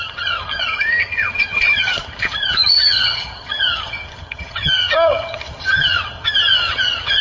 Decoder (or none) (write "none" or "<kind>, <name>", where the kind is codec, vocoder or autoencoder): vocoder, HiFi-GAN